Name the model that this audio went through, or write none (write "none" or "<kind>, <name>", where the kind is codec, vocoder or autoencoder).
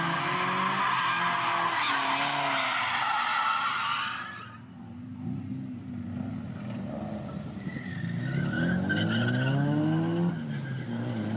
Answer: none